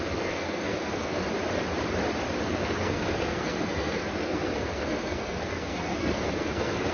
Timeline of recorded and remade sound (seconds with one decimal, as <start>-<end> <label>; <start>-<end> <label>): 0.0-1.2 remade; 1.2-2.4 recorded; 2.4-6.9 remade